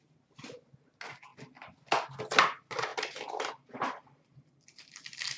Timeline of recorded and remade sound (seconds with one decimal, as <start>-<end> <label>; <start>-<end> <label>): 0.0-2.9 recorded; 2.9-4.9 remade; 4.9-5.4 recorded